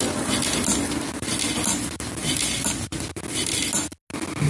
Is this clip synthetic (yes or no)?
no